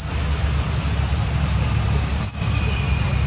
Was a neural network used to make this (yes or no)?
no